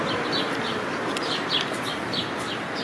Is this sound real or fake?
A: real